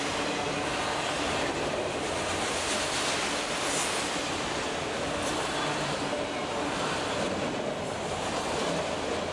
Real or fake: real